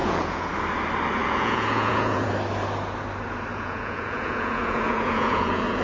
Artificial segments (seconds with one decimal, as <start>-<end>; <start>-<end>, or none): 0.0-0.5; 1.2-2.3; 3.5-5.8